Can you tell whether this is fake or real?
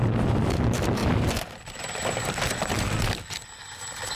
real